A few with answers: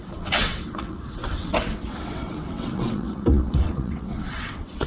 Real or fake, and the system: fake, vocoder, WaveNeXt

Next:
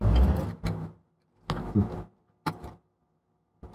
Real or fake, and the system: real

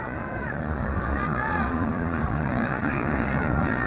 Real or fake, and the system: fake, vocoder, Vocos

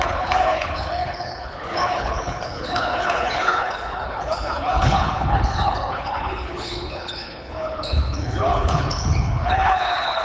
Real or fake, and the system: fake, codec, HILCodec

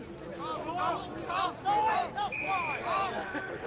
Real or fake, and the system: real